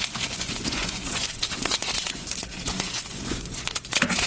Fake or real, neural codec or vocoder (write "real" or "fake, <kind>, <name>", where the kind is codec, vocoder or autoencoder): fake, vocoder, Vocos